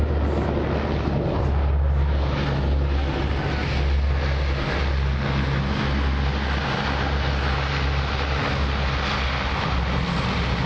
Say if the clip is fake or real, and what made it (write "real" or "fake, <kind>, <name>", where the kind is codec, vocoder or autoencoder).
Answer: real